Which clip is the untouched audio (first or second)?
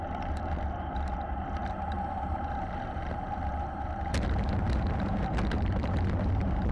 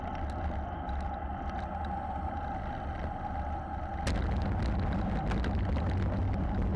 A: second